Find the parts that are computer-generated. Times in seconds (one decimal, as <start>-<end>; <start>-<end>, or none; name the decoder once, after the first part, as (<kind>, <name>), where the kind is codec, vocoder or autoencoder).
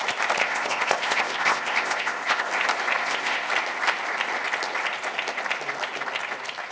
0.4-2.5 (codec, ZipCodec); 3.0-3.5